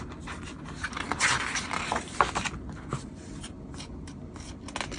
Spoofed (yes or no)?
no